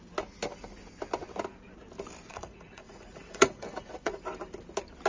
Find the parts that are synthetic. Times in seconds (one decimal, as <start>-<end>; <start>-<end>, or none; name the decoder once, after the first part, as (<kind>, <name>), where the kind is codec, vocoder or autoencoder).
2.3-4.2 (vocoder, Vocos)